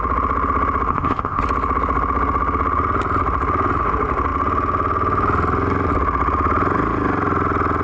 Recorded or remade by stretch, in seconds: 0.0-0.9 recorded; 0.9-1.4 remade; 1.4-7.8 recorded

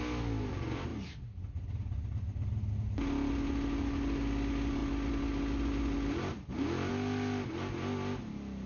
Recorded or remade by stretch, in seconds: 0.0-8.7 recorded

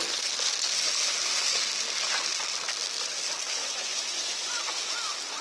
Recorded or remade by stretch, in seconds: 0.0-3.6 recorded; 3.6-4.6 remade; 4.6-5.4 recorded

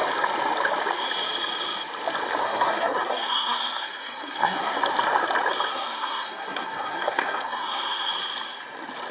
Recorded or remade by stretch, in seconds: 0.0-2.4 recorded; 2.4-4.8 remade; 4.8-5.7 recorded; 5.7-8.1 remade; 8.1-9.1 recorded

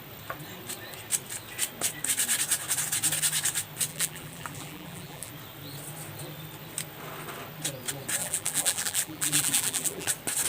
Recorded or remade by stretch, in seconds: 0.0-3.9 recorded; 3.9-5.3 remade; 5.3-8.2 recorded; 8.2-10.1 remade; 10.1-10.5 recorded

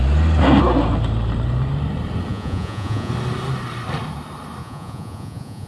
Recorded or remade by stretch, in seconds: 0.0-2.3 recorded; 2.3-3.1 remade; 3.1-4.6 recorded; 4.6-5.7 remade

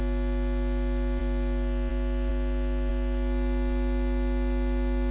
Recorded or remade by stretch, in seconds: 0.0-5.1 recorded